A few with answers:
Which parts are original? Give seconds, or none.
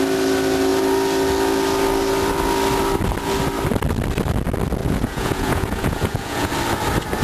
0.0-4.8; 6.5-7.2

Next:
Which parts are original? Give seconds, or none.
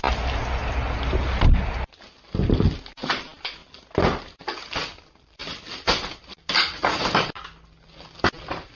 0.0-8.7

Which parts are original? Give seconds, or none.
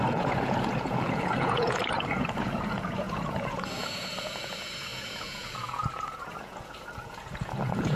none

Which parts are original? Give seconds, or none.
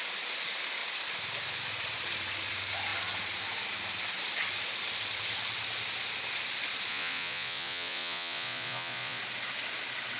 0.0-6.9; 9.2-10.2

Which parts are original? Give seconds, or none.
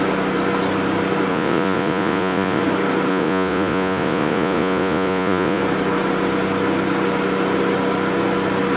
0.0-1.3; 2.6-3.1; 5.6-8.8